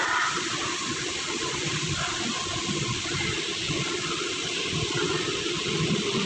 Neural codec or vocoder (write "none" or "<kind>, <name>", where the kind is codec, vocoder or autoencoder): none